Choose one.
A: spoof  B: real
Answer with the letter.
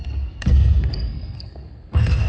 A